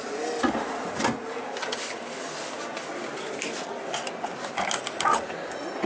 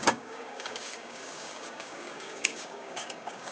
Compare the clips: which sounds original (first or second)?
first